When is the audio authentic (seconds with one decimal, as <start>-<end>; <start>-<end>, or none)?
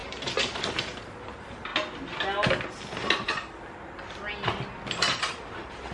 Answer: 1.7-5.2